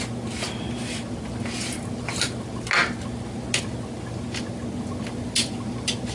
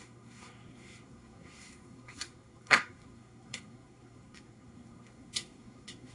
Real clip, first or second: first